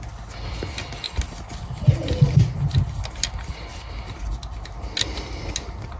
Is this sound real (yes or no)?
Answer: yes